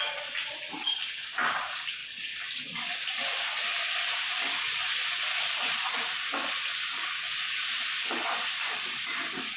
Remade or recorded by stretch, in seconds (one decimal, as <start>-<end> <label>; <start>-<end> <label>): 0.0-2.0 recorded; 2.0-5.9 remade; 5.9-9.6 recorded